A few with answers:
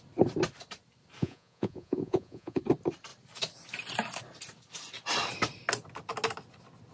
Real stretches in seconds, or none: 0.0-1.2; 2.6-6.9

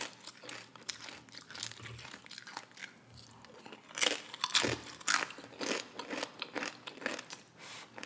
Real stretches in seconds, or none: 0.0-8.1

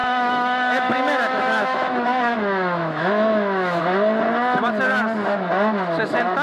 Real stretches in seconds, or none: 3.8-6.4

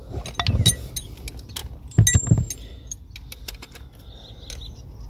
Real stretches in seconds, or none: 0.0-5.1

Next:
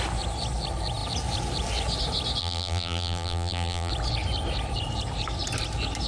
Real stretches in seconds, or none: 0.0-2.4; 3.9-6.1

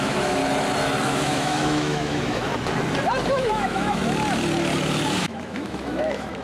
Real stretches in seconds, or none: 0.4-1.0; 2.5-3.3; 4.0-5.2

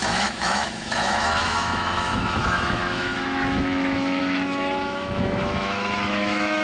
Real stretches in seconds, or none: none